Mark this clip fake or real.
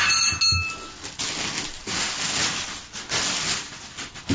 real